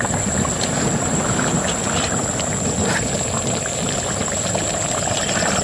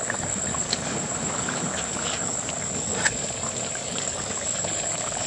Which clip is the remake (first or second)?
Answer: second